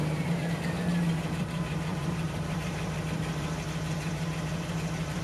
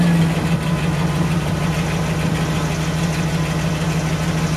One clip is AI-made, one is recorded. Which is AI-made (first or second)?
first